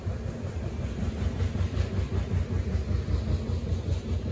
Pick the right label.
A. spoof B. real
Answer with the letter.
B